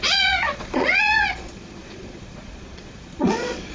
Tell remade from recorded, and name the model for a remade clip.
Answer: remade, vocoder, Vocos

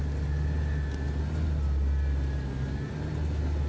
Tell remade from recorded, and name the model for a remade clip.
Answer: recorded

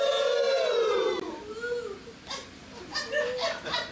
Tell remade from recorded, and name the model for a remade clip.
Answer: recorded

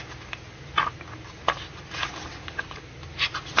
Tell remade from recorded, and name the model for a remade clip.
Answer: recorded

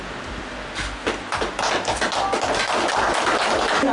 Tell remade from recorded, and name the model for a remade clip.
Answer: recorded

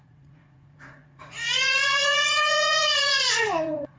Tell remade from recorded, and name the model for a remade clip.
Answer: remade, vocoder, Vocos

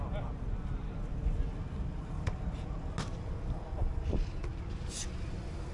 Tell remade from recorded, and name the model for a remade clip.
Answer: recorded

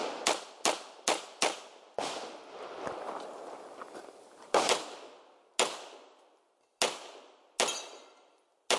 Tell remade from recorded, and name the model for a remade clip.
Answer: recorded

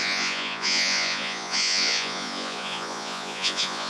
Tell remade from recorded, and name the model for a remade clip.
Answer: remade, vocoder, Vocos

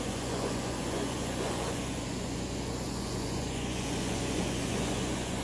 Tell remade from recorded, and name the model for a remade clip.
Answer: remade, vocoder, Vocos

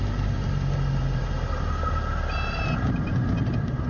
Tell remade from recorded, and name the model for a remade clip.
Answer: recorded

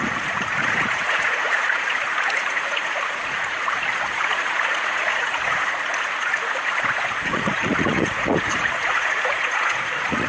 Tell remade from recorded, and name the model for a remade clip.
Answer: remade, vocoder, Vocos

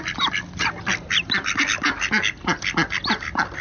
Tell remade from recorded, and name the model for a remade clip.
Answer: recorded